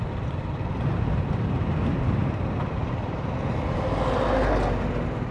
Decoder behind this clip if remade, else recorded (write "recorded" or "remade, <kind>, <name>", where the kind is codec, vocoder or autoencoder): recorded